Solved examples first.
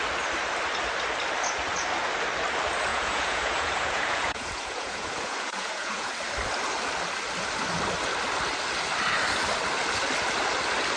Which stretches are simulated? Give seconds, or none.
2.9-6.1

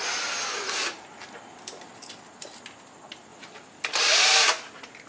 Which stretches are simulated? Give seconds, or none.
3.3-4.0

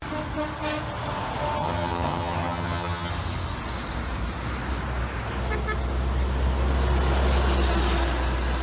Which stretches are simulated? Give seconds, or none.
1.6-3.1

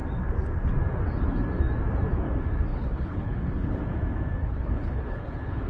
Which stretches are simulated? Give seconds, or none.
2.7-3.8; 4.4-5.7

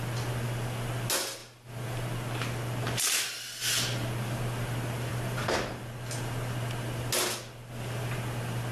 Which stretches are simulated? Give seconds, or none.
5.1-5.7

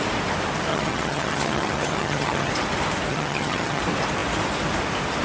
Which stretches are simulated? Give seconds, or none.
0.7-2.5; 3.1-3.8